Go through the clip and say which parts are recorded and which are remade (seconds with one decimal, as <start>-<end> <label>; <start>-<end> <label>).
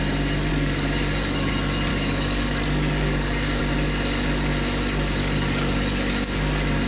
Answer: 0.0-0.5 recorded; 0.5-1.5 remade; 1.5-1.9 recorded; 1.9-3.6 remade; 3.6-5.2 recorded; 5.2-6.1 remade; 6.1-6.9 recorded